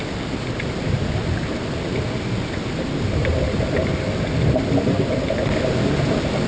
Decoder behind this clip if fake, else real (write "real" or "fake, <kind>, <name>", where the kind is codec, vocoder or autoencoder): real